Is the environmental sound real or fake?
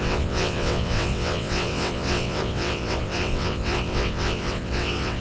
fake